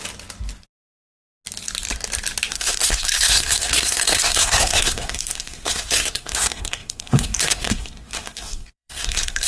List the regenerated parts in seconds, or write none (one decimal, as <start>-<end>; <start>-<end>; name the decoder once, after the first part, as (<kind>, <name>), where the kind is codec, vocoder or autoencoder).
2.5-9.5 (codec, SNAC)